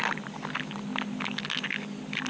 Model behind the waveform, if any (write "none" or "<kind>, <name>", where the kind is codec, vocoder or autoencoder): none